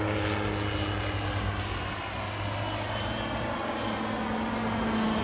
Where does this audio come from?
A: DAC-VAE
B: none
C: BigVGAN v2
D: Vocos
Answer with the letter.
B